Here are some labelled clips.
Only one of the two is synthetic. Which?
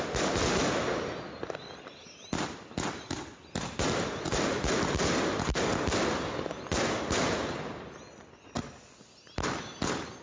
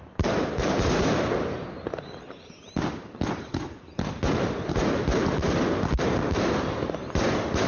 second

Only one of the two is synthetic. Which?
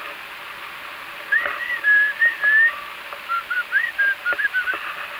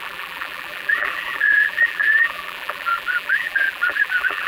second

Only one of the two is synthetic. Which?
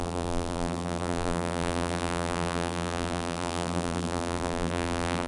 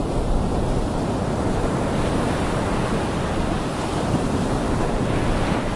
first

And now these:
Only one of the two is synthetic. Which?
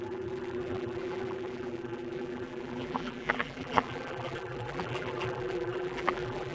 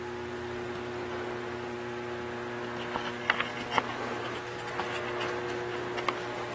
first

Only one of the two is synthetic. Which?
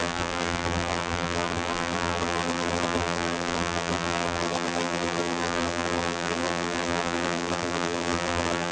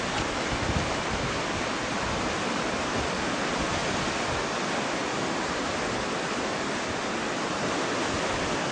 first